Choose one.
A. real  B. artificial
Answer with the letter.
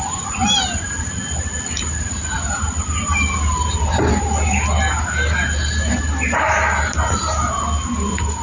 A